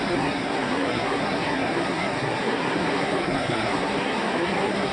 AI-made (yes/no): yes